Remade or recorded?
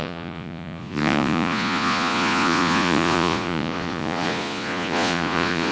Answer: remade